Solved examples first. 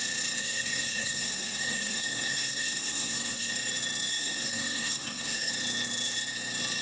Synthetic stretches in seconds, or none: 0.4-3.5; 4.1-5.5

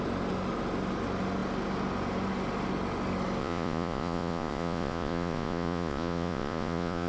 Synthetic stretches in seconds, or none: 3.4-7.1

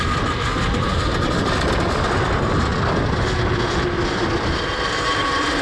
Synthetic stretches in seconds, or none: none

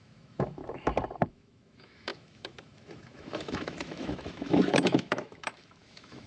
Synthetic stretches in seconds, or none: 0.0-0.6; 1.3-6.3

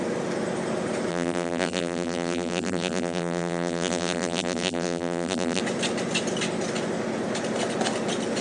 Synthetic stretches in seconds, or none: 1.1-5.6

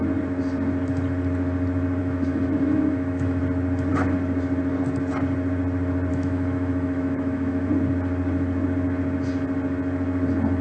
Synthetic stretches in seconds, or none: 2.0-3.4; 6.1-7.7

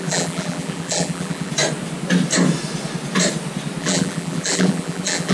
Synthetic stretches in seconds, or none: 0.0-1.5; 3.8-5.3

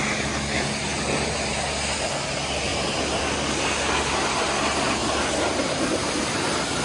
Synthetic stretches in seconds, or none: none